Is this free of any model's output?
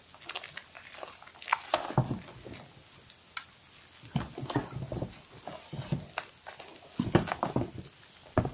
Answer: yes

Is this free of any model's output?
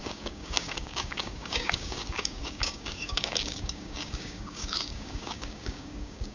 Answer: no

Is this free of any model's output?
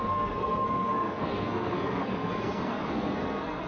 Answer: no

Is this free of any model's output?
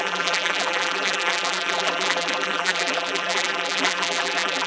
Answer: no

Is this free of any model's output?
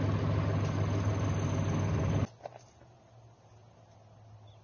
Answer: yes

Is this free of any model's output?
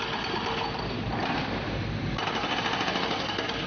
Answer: yes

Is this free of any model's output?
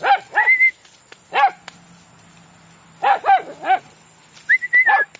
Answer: yes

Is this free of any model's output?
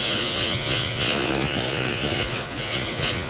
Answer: no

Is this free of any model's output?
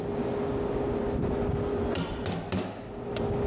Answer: yes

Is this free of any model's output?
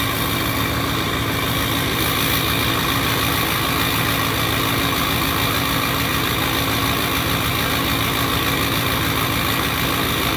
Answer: yes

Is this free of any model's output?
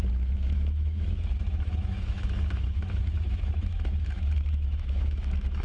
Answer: no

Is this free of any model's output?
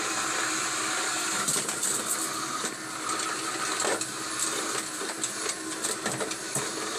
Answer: no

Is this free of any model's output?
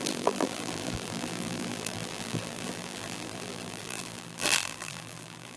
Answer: no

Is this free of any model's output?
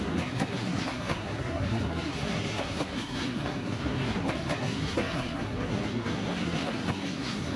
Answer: no